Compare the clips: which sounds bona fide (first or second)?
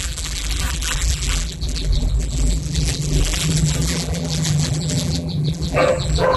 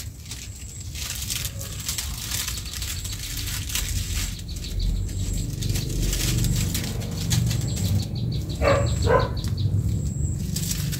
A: second